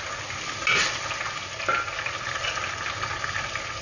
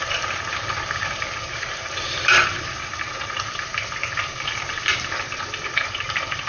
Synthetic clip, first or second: second